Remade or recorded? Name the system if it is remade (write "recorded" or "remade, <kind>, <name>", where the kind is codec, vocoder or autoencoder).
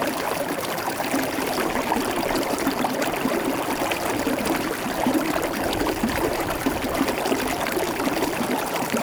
remade, vocoder, BigVGAN v2